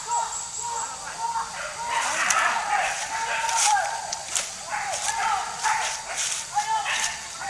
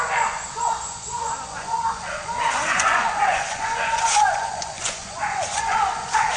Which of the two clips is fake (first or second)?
second